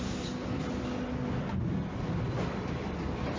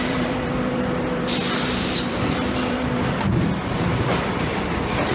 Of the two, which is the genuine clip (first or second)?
first